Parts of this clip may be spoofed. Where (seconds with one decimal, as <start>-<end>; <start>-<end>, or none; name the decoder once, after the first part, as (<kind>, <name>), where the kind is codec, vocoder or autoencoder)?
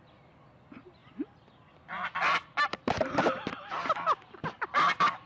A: none